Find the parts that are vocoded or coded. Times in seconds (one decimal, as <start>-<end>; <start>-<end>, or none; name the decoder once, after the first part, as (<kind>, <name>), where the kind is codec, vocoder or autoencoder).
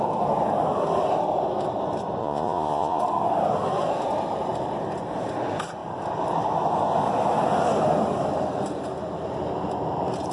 2.2-3.0 (vocoder, Vocos)